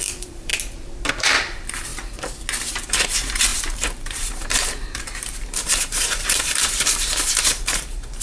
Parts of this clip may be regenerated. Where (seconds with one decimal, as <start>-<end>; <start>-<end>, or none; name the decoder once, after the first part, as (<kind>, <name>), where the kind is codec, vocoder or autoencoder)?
0.0-0.5 (vocoder, BigVGAN v2); 1.1-1.9; 2.6-8.2